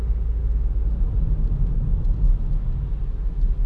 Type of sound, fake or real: real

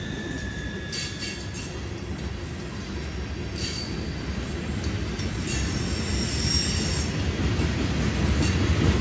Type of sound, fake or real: real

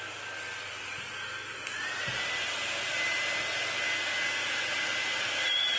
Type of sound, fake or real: real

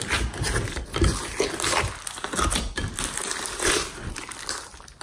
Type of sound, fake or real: real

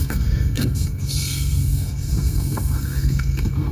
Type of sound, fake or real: fake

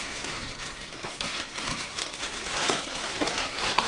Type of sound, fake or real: fake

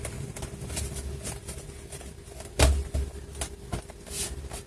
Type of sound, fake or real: real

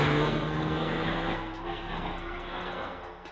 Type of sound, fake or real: fake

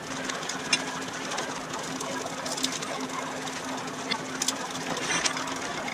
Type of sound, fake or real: real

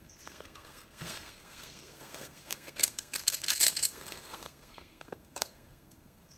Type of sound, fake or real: fake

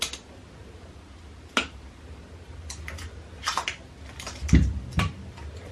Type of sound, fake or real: real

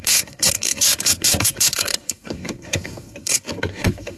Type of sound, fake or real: fake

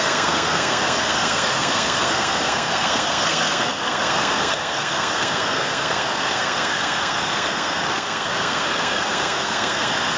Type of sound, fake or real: fake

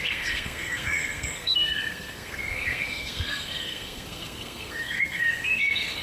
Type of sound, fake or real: fake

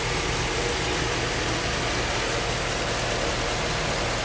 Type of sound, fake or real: real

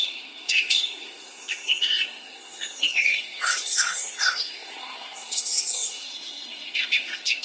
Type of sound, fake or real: fake